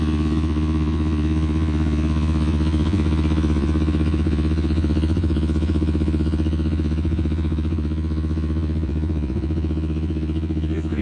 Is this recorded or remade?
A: remade